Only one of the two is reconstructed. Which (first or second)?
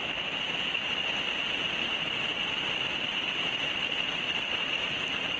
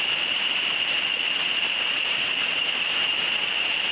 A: second